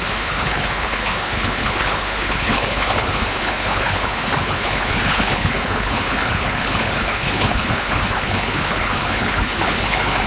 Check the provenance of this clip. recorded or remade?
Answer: remade